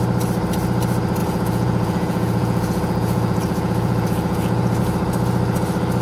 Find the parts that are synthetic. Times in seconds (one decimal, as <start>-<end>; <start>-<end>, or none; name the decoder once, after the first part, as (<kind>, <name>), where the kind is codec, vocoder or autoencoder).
1.2-4.8 (vocoder, Vocos)